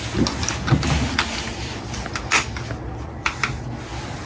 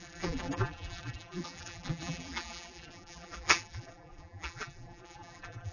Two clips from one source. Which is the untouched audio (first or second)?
first